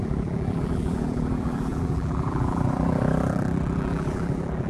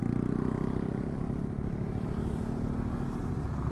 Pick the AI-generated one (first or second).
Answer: first